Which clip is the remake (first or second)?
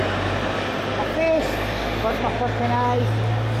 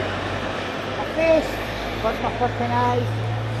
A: second